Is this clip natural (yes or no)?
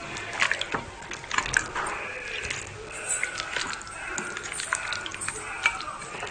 yes